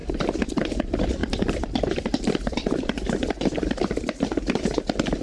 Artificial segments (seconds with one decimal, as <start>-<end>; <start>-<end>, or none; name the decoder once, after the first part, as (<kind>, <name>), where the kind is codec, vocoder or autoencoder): none